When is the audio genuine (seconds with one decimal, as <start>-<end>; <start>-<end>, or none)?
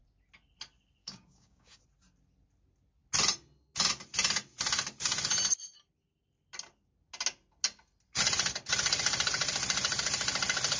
0.0-1.0; 1.8-10.8